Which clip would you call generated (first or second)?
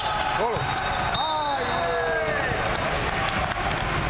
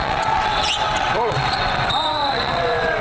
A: second